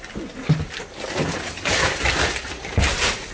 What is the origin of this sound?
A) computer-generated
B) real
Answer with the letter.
B